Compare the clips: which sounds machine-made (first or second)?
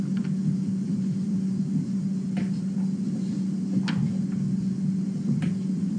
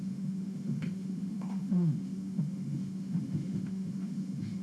second